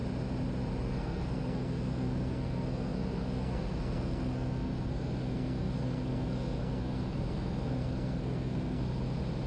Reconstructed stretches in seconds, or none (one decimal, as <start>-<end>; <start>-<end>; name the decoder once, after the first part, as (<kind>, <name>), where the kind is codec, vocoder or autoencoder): 0.8-8.9 (codec, SNAC)